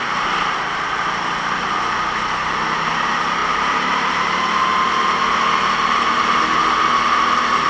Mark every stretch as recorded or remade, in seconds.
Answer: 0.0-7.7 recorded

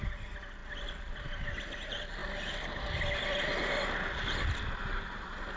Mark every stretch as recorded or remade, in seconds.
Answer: 0.0-5.6 recorded

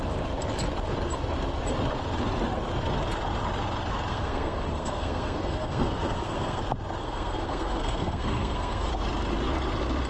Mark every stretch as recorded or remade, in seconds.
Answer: 0.0-4.1 recorded; 4.1-6.6 remade; 6.6-7.0 recorded; 7.0-8.9 remade; 8.9-10.1 recorded